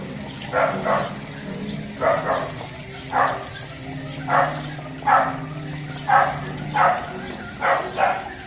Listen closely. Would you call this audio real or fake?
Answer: real